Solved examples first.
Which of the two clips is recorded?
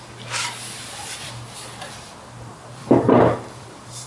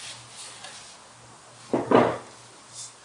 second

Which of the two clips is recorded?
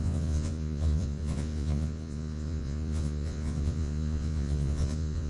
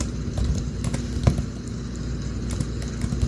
second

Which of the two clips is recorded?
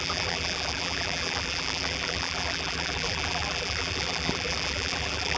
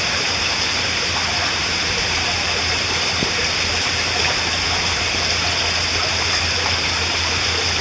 second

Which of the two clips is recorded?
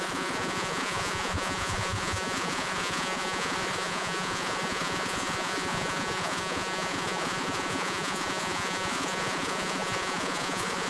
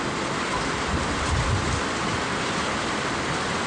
second